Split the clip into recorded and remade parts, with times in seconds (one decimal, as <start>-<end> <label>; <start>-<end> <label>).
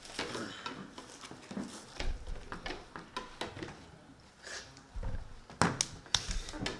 0.0-6.8 recorded